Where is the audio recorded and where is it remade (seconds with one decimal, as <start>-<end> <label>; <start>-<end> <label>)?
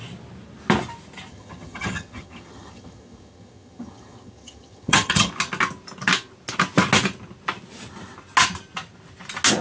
0.0-1.3 recorded; 1.3-5.3 remade; 5.3-9.6 recorded